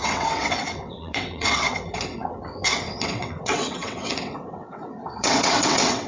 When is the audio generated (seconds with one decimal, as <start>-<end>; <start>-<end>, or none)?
0.0-6.1